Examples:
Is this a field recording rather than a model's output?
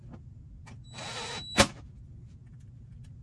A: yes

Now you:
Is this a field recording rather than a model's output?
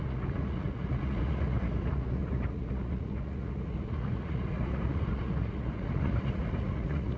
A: no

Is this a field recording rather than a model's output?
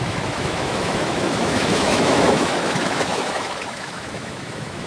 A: no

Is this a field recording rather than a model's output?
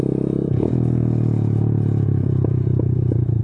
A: no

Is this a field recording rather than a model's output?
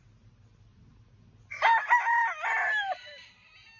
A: yes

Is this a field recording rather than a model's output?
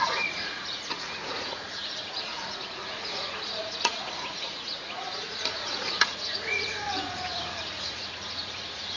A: no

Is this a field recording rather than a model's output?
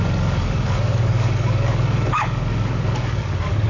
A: no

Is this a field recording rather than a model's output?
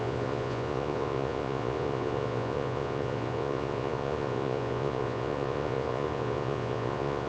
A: no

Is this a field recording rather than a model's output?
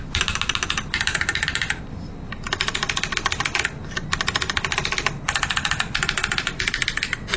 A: yes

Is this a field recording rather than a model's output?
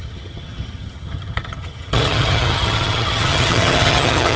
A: no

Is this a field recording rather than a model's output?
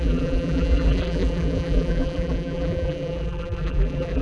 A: no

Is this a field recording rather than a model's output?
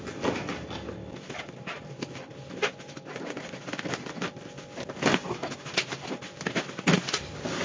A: yes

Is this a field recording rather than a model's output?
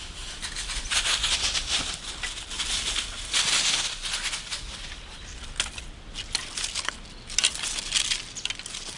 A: yes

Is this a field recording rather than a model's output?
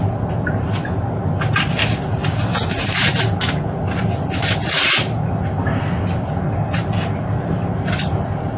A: yes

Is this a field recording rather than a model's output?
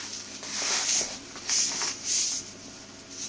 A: yes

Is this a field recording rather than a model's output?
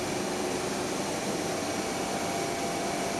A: yes